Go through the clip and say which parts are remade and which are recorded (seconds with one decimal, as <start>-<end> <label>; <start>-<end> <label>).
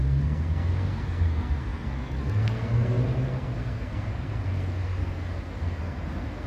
0.0-6.5 remade